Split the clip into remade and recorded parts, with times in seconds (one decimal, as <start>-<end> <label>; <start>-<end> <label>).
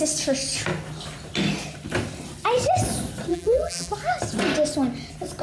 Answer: 0.0-3.3 recorded; 3.3-3.9 remade; 3.9-5.4 recorded